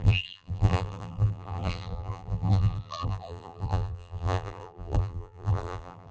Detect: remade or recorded remade